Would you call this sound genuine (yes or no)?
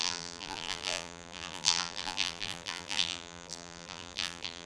no